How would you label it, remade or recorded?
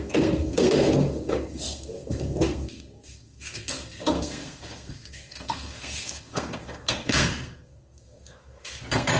remade